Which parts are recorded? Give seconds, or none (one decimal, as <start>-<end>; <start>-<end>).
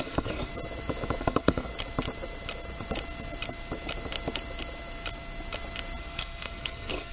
0.5-1.2; 1.7-6.0